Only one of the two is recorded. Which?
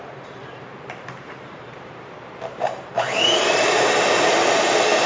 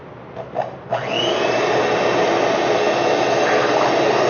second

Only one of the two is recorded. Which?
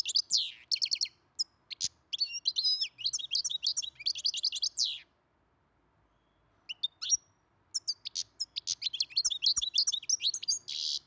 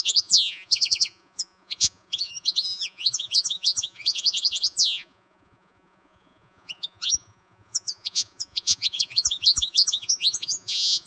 first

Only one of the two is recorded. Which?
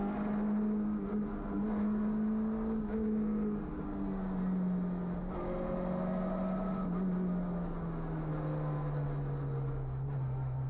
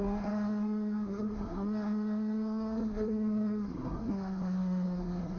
first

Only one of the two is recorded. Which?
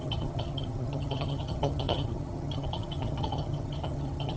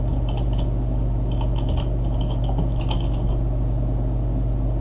second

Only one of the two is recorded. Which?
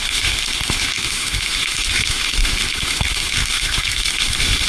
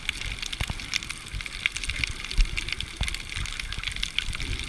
second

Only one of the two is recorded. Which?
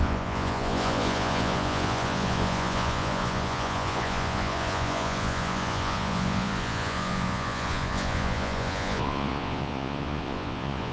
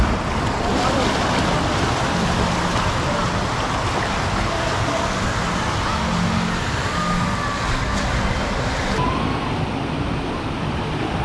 second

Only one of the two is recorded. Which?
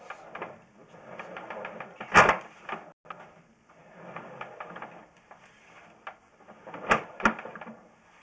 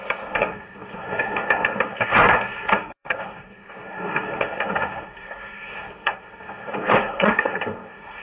first